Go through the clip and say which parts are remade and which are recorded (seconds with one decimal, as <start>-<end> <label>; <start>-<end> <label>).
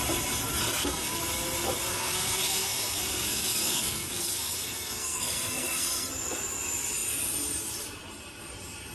0.0-0.6 recorded; 0.6-1.2 remade; 1.2-1.9 recorded; 1.9-6.1 remade; 6.1-8.9 recorded